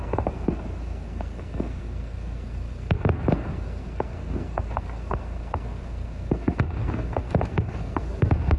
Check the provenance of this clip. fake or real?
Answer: fake